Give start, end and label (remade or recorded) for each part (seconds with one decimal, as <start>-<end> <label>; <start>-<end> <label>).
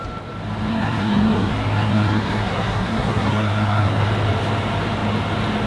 0.0-0.7 recorded; 0.7-4.1 remade; 4.1-5.7 recorded